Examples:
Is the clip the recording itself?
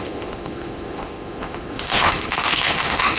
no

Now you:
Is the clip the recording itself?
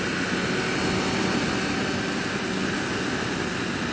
yes